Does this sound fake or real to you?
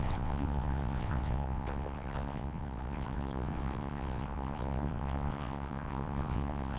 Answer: fake